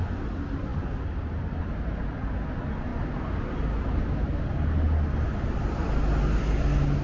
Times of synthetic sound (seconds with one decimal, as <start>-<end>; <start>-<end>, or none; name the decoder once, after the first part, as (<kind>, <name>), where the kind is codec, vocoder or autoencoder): none